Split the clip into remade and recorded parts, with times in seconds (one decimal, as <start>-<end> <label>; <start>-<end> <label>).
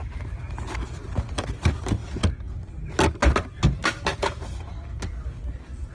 0.0-5.9 recorded